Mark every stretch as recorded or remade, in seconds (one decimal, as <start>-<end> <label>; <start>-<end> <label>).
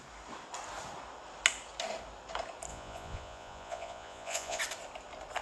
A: 0.0-2.7 recorded; 2.7-4.6 remade; 4.6-5.4 recorded